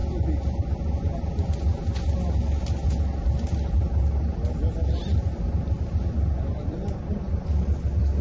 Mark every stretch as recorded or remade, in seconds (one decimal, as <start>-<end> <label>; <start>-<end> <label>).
0.0-8.2 recorded